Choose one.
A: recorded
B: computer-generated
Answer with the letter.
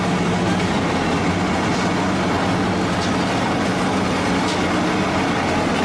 A